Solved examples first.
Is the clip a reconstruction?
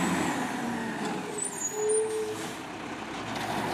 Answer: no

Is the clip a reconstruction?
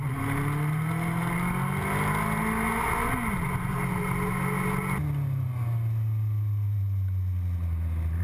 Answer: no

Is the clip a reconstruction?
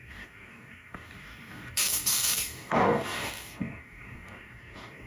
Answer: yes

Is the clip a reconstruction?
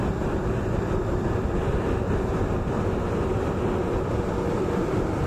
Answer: no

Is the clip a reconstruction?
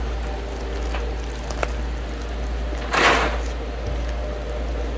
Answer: no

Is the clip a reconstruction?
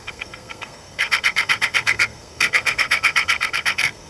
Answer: yes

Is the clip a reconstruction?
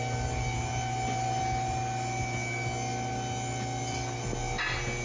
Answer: no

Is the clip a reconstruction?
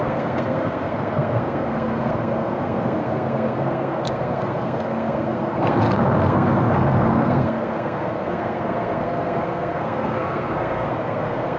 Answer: yes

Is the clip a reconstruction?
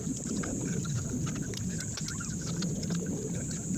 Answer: no